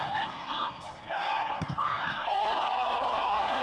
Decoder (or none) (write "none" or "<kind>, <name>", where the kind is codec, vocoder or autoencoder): codec, SNAC